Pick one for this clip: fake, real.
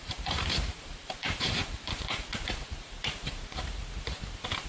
fake